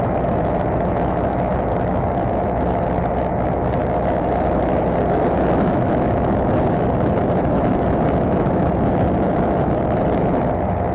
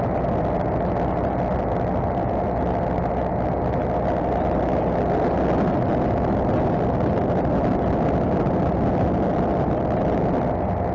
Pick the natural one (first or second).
second